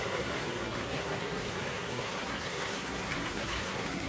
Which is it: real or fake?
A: fake